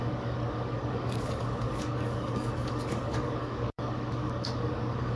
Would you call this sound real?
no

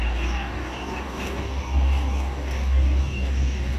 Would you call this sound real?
no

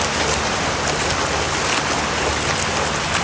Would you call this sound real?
yes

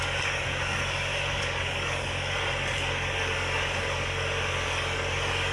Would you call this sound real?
no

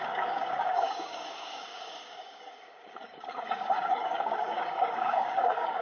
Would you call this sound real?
no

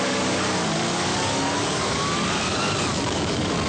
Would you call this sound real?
no